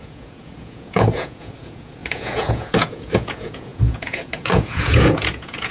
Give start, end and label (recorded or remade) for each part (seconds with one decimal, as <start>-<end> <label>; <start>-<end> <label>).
0.0-5.7 remade